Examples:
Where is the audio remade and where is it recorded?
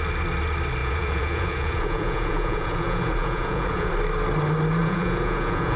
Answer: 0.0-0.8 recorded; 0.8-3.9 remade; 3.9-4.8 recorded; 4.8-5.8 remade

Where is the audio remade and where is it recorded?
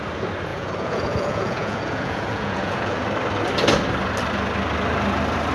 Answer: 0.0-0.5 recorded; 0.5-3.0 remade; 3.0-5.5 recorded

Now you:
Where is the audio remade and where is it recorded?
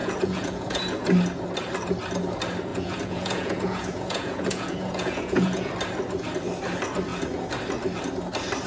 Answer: 0.0-1.1 remade; 1.1-2.7 recorded; 2.7-5.7 remade; 5.7-8.7 recorded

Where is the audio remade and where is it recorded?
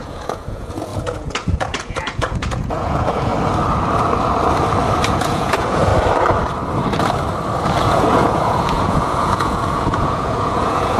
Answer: 0.0-3.3 remade; 3.3-5.1 recorded; 5.1-5.9 remade; 5.9-7.8 recorded; 7.8-11.0 remade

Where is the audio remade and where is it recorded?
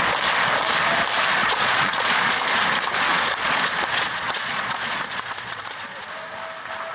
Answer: 0.0-1.4 recorded; 1.4-2.3 remade; 2.3-3.1 recorded; 3.1-6.0 remade; 6.0-6.9 recorded